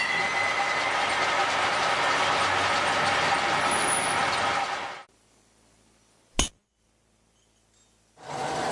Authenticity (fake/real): real